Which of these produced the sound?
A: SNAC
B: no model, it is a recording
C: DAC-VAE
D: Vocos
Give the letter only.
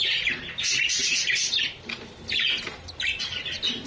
B